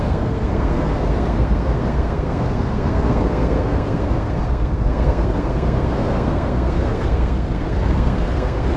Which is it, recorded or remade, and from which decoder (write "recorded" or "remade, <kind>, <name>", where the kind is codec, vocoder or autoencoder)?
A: remade, codec, SNAC